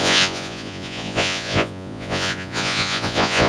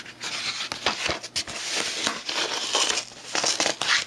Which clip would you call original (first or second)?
second